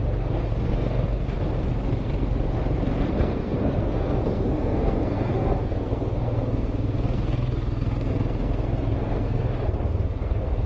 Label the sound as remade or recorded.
remade